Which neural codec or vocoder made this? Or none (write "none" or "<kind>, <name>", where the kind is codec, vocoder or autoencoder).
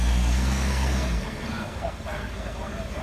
codec, SNAC